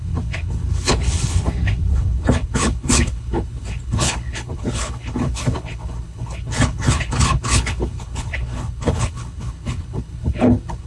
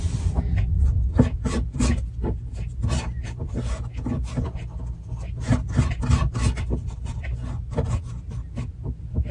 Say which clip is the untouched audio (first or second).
second